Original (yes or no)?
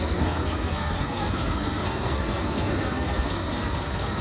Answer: no